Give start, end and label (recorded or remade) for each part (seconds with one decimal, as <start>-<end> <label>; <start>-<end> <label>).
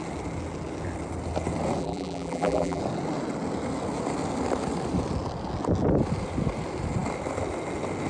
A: 0.0-1.8 recorded; 1.8-2.8 remade; 2.8-8.1 recorded